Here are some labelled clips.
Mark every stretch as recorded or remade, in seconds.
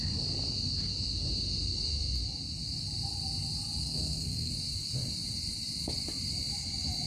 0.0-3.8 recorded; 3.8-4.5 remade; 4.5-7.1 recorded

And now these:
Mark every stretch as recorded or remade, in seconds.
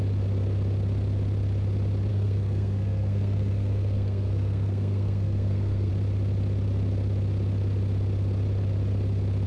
0.0-2.1 recorded; 2.1-5.9 remade; 5.9-9.5 recorded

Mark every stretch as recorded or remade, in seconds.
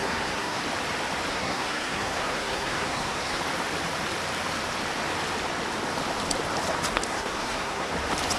0.0-0.6 remade; 0.6-1.3 recorded; 1.3-3.4 remade; 3.4-7.1 recorded; 7.1-7.9 remade; 7.9-8.4 recorded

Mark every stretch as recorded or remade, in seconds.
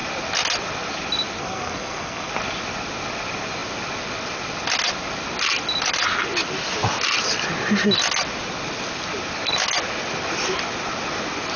0.0-1.4 recorded; 1.4-2.3 remade; 2.3-11.6 recorded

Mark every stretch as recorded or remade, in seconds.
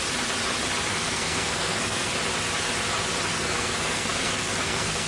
0.0-0.9 recorded; 0.9-2.1 remade; 2.1-3.3 recorded; 3.3-5.1 remade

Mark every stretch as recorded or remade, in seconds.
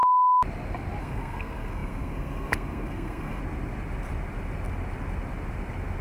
0.0-1.0 recorded; 1.0-3.4 remade; 3.4-6.0 recorded